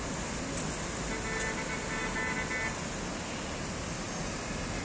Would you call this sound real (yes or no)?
yes